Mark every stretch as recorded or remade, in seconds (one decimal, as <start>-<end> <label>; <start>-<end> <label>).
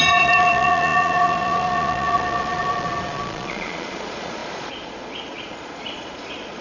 0.0-6.6 remade